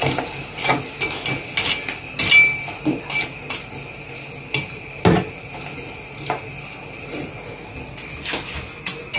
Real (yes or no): yes